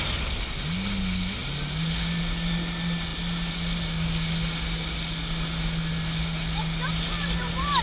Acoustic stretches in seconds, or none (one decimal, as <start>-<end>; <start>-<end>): 0.0-7.8